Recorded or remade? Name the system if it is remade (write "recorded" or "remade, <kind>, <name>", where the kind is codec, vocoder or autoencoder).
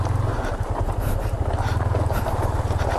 recorded